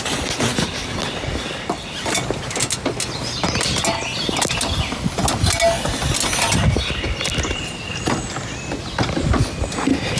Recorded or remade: recorded